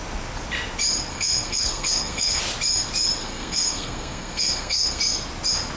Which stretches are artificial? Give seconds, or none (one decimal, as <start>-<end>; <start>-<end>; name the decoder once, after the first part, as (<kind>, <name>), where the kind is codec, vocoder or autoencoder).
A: 1.1-2.4 (codec, SNAC); 3.2-5.0